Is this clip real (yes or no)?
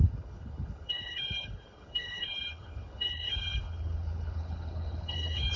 no